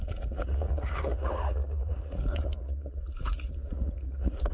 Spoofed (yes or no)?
yes